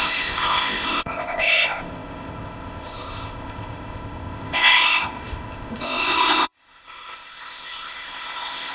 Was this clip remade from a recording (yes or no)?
yes